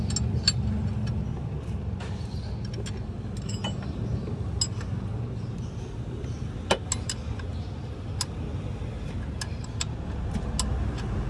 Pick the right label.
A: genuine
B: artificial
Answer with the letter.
A